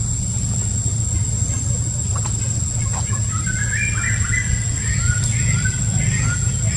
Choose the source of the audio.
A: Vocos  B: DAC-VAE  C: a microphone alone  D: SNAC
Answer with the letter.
C